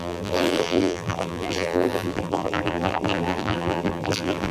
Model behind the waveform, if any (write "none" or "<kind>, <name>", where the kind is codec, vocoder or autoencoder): vocoder, BigVGAN v2